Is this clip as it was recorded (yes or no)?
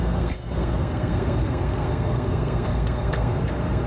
no